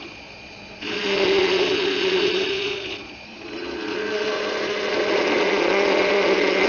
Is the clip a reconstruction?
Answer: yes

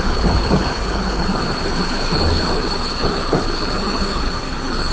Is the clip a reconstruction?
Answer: yes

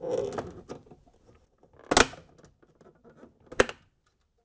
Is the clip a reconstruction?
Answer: no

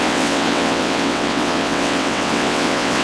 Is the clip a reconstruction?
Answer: yes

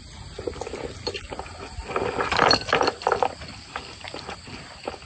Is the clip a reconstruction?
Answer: no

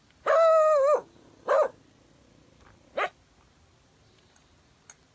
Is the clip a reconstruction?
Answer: no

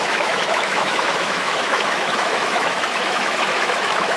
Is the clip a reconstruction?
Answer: yes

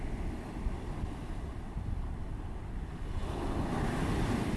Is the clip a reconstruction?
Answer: no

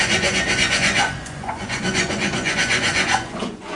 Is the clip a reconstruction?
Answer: yes